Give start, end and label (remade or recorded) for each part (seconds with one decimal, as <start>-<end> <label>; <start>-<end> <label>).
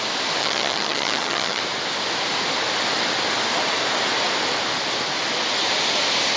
0.0-0.4 recorded; 0.4-1.6 remade; 1.6-6.4 recorded